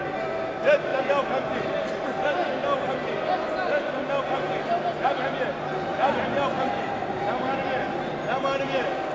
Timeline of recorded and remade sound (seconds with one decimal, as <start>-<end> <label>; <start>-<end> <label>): 0.0-9.1 recorded